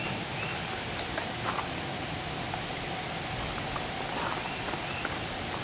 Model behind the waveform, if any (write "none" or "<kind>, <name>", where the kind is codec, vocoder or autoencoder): none